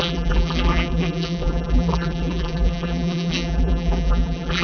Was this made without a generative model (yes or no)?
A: no